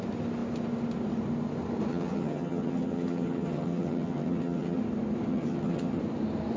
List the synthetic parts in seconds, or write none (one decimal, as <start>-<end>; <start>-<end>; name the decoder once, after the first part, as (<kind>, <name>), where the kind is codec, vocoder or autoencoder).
1.9-4.8 (vocoder, HiFi-GAN); 5.3-6.0

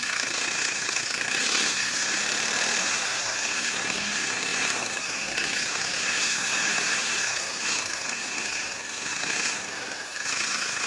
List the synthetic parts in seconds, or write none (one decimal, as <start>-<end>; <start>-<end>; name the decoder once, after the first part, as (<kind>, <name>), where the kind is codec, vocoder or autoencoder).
0.0-2.2 (codec, SNAC); 2.8-10.9

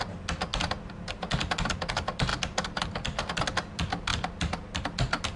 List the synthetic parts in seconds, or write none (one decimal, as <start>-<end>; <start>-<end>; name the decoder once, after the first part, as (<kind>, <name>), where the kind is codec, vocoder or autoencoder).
none

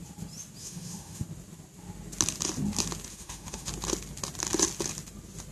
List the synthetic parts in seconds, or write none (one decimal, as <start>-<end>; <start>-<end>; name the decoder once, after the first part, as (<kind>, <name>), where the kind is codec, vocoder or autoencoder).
0.6-1.2 (autoencoder, DAC-VAE); 3.1-3.7

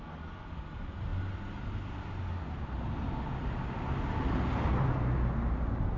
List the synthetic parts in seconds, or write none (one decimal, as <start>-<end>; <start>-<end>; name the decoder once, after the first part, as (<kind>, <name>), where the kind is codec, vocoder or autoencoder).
none

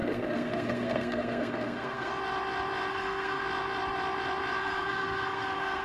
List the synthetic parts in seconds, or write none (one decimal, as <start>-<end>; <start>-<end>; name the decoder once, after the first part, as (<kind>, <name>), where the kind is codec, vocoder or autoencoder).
0.0-2.1 (codec, SNAC); 2.9-3.4; 4.6-5.8

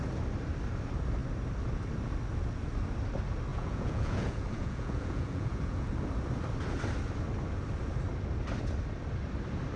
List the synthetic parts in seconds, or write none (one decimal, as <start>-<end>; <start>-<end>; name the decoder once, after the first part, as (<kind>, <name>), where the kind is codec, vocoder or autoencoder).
3.5-5.9 (vocoder, Vocos)

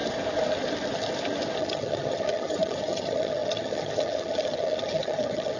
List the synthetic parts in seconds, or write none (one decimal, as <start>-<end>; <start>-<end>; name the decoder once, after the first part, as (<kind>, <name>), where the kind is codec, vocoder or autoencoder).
1.6-5.6 (vocoder, HiFi-GAN)